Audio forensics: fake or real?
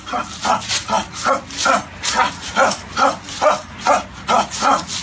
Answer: real